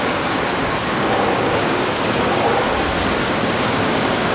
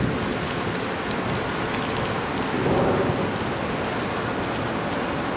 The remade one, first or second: first